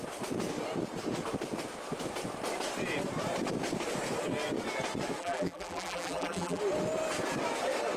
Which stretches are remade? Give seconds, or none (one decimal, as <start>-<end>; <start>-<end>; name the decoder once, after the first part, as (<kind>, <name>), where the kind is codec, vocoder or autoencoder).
5.2-6.6 (vocoder, BigVGAN v2)